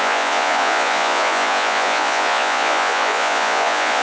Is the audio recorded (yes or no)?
no